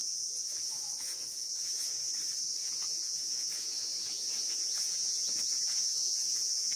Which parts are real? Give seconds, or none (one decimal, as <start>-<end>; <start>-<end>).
2.1-2.6